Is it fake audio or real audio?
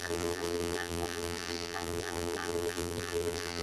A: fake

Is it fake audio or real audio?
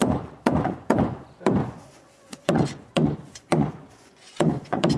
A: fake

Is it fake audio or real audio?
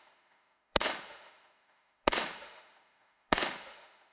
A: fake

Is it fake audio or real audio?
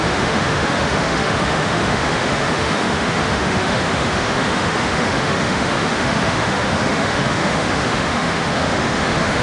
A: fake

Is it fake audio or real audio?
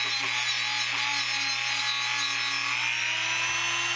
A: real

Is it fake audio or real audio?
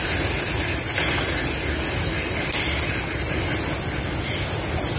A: real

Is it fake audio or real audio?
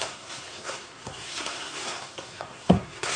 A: fake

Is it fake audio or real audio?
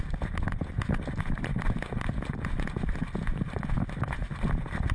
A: real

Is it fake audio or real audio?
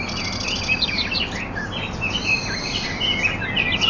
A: real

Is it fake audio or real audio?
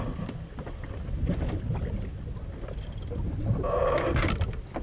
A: real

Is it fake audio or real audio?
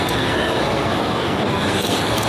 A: fake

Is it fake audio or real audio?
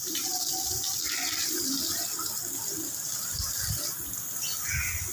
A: fake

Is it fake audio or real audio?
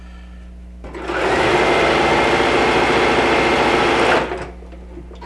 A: real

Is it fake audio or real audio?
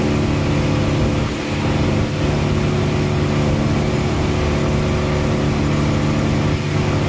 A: real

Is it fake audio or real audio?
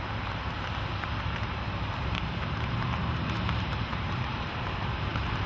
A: fake